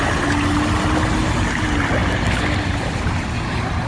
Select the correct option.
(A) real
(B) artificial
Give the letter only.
A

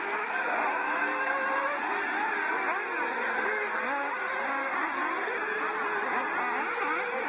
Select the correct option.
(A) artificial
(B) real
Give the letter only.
B